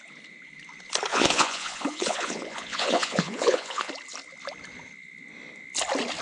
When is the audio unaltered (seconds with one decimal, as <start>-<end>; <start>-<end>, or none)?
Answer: 0.0-1.1; 3.9-6.2